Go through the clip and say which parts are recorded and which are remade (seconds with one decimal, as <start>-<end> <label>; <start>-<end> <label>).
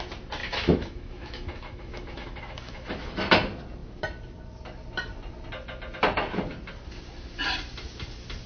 0.0-0.4 recorded; 0.4-3.1 remade; 3.1-8.5 recorded